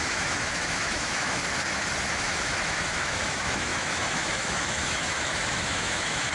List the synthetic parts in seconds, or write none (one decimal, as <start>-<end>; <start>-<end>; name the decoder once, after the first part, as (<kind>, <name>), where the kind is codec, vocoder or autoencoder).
0.0-1.4 (autoencoder, DAC-VAE); 2.1-6.3